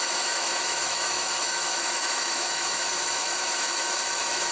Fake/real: fake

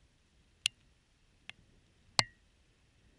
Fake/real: real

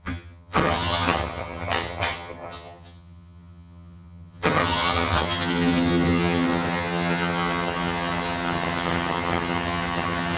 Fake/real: fake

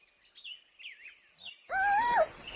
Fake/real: real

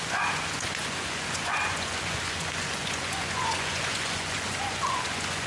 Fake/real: fake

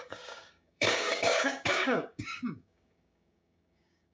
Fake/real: fake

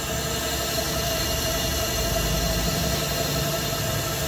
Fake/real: real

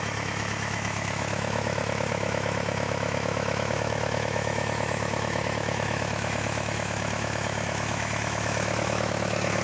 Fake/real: fake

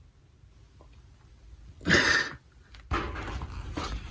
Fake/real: real